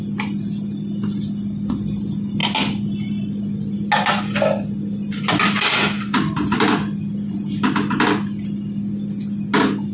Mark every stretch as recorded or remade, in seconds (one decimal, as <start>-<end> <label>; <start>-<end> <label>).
0.0-9.9 recorded